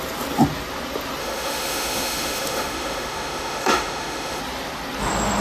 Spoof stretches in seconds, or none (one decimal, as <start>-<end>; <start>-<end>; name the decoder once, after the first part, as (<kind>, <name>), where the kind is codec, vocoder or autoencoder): 1.2-4.4 (autoencoder, DAC-VAE)